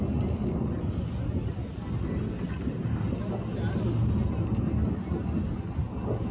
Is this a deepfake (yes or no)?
no